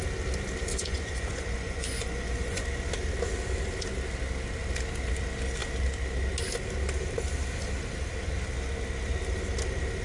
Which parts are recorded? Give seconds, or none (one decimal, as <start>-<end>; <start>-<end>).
0.0-0.6; 2.6-10.0